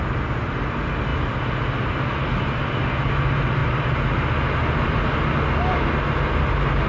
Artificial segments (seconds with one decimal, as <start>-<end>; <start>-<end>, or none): none